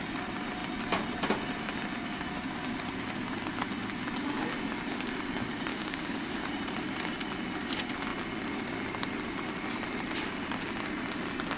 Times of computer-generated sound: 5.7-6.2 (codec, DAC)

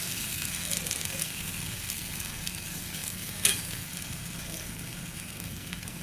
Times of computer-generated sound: 0.0-6.0 (codec, SNAC)

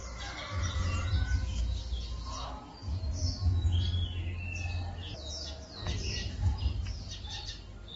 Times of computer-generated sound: 6.0-7.1 (vocoder, BigVGAN v2)